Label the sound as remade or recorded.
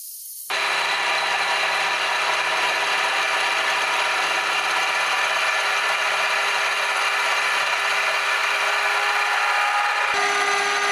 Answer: recorded